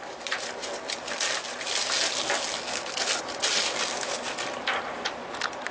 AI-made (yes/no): no